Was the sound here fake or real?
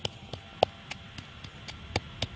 real